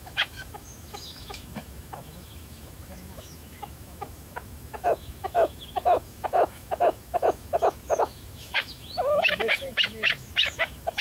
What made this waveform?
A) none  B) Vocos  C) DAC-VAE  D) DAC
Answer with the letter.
C